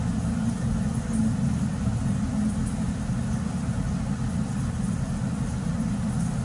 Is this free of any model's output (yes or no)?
yes